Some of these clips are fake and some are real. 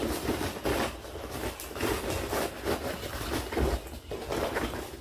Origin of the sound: real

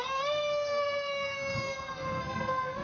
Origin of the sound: fake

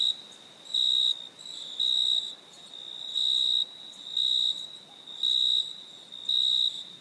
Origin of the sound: real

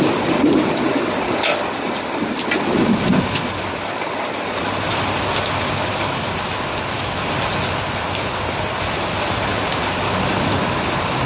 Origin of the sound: real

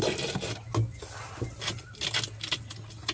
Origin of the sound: real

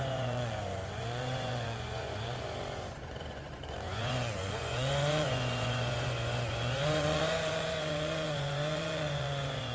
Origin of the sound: fake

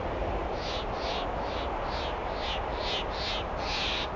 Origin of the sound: real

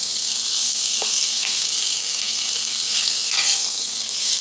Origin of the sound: fake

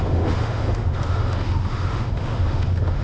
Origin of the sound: fake